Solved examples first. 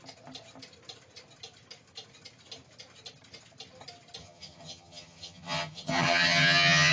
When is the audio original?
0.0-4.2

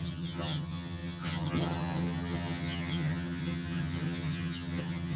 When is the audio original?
none

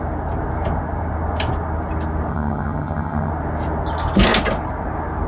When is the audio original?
0.0-2.3; 3.3-5.3

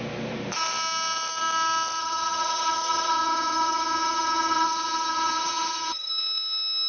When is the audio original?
0.0-2.0; 6.1-6.9